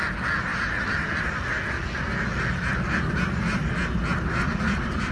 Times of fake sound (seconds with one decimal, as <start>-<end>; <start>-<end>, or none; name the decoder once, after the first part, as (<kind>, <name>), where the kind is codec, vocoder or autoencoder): none